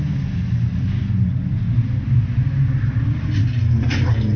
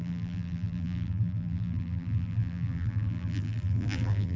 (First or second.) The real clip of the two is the first